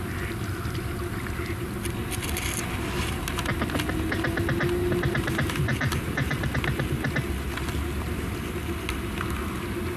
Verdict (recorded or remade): recorded